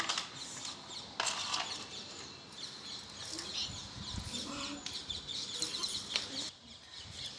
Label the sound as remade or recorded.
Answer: recorded